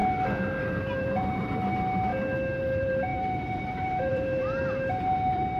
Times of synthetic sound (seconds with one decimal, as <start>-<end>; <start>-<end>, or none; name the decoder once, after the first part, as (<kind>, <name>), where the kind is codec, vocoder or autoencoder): 0.6-2.1 (vocoder, BigVGAN v2); 2.6-5.6